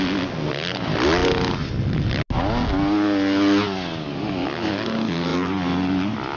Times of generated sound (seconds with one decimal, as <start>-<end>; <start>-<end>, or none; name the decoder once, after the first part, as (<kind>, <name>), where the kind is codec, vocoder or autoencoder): none

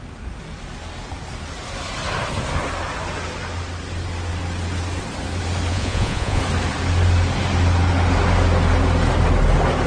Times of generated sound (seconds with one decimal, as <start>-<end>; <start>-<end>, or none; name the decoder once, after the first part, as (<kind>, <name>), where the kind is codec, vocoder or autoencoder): 5.7-6.4 (vocoder, Vocos)

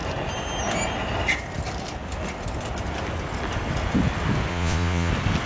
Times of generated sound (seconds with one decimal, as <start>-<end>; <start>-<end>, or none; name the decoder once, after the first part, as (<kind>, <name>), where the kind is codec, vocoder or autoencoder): 4.5-5.1 (vocoder, Vocos)

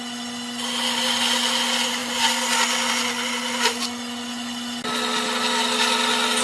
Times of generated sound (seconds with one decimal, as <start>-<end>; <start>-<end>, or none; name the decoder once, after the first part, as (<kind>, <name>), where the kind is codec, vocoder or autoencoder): none